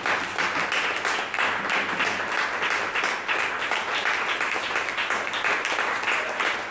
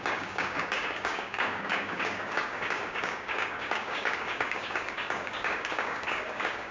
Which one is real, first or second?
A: first